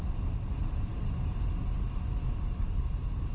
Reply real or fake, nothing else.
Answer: real